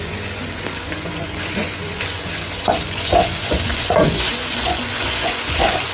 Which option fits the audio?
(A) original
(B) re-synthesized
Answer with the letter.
B